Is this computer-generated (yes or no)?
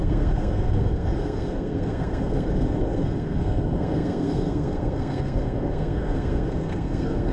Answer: yes